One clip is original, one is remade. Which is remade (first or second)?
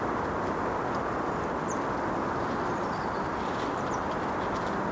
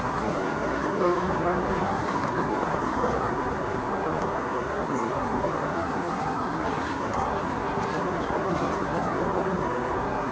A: second